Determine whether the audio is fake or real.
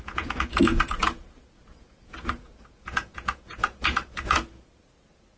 fake